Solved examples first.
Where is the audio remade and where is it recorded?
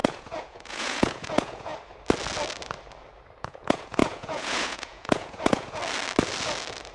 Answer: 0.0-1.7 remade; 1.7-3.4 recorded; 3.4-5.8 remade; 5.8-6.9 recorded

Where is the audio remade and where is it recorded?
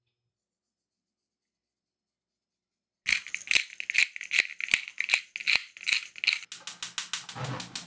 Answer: 0.0-7.9 recorded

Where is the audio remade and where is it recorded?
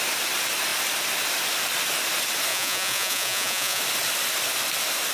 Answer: 0.0-2.5 recorded; 2.5-3.8 remade; 3.8-5.1 recorded